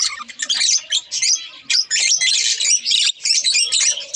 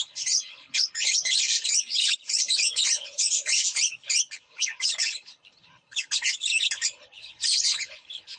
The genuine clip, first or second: first